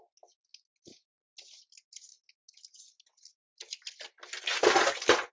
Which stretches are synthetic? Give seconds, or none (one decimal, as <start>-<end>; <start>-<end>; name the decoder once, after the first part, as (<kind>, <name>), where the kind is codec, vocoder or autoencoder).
none